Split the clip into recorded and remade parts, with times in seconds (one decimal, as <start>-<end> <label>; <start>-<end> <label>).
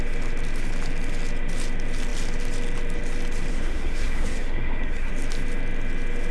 0.0-3.5 recorded; 3.5-5.1 remade; 5.1-6.3 recorded